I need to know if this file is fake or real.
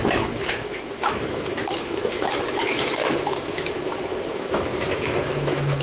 fake